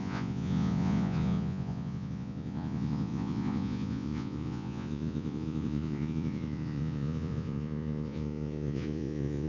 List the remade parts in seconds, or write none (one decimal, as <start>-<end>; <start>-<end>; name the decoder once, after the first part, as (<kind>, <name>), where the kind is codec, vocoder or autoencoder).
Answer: 0.0-9.5 (vocoder, Vocos)